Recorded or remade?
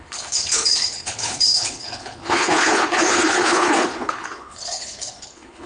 remade